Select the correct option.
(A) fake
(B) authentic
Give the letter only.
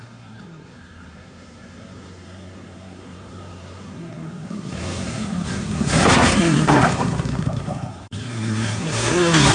A